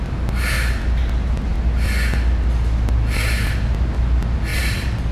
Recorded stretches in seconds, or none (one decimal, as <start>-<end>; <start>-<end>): 0.0-5.1